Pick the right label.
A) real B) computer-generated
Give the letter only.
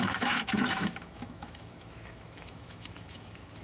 B